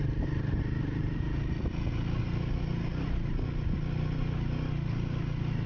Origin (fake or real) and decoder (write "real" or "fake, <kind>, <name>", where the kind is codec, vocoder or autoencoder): real